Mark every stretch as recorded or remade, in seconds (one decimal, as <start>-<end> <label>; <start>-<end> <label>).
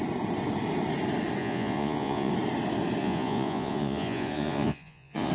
0.0-1.4 recorded; 1.4-2.3 remade; 2.3-3.0 recorded; 3.0-5.3 remade